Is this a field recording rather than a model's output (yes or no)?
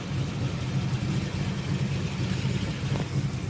yes